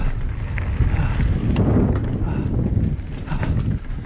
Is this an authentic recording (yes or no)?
yes